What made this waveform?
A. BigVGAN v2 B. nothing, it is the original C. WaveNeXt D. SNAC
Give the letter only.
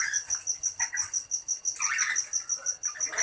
B